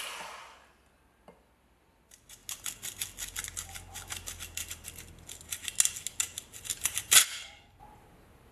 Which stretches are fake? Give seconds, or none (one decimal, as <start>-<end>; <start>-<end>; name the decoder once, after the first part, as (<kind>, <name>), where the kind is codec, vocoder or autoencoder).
7.2-7.8 (codec, SNAC)